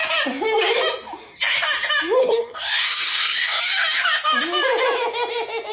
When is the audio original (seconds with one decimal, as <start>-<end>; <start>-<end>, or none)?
0.0-2.2; 3.6-5.7